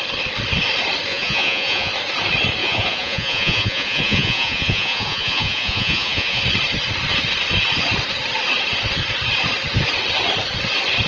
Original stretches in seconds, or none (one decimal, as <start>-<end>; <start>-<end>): 0.0-1.1; 1.9-2.6; 6.4-11.1